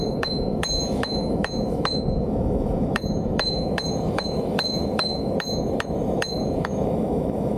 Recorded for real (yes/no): no